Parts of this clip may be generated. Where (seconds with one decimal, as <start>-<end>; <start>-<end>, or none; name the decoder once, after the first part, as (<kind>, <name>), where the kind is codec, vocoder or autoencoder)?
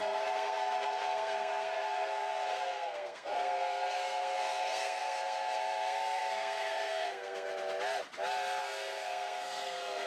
0.0-7.5 (codec, SNAC); 8.6-10.1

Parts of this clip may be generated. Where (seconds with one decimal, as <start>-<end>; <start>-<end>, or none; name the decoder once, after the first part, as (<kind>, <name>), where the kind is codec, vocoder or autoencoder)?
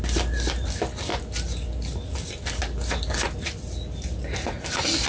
none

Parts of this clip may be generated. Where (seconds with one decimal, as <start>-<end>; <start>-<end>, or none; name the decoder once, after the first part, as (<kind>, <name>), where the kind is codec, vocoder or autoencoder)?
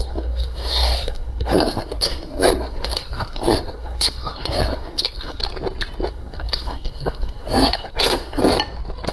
0.0-5.4 (codec, SNAC); 6.1-8.4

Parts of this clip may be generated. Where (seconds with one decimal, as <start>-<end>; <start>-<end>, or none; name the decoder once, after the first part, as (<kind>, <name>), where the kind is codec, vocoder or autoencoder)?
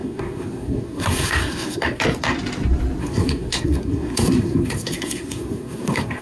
0.0-2.0 (codec, SNAC); 3.0-6.2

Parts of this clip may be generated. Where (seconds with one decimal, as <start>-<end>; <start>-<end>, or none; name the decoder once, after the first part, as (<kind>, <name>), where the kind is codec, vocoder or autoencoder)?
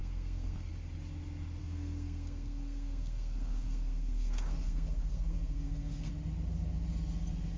0.0-0.7 (codec, SNAC); 1.6-6.1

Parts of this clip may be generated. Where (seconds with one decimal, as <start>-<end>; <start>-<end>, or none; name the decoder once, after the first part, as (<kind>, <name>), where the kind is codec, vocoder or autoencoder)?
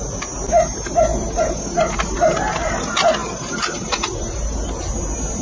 none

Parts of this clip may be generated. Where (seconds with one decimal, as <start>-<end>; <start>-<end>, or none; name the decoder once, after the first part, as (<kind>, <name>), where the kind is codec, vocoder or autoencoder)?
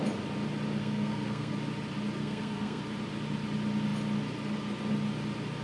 0.8-1.5 (codec, SNAC); 2.2-2.8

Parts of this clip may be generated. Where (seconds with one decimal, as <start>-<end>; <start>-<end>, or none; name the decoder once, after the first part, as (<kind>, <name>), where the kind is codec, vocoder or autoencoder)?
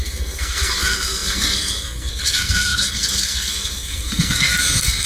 0.0-5.1 (codec, SNAC)